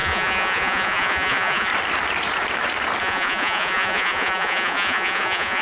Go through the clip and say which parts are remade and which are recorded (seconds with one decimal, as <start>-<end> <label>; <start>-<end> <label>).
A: 0.0-1.7 remade; 1.7-3.0 recorded; 3.0-5.6 remade